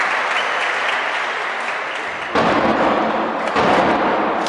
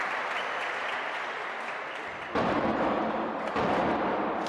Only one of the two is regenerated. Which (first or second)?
second